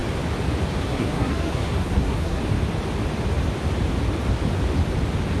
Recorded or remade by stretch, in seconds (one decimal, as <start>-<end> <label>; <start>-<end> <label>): 0.0-0.8 recorded; 0.8-2.4 remade; 2.4-5.4 recorded